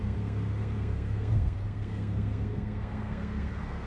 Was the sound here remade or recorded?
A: remade